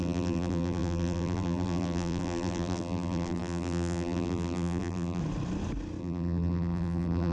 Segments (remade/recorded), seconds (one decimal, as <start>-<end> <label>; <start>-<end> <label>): 0.0-5.2 remade; 5.2-6.0 recorded; 6.0-7.3 remade